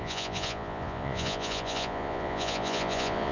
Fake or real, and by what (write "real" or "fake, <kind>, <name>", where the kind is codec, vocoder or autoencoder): fake, vocoder, Vocos